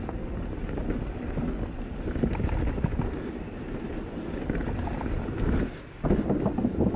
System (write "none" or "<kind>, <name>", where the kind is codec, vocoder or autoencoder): none